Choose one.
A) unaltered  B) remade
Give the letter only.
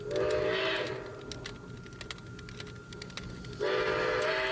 A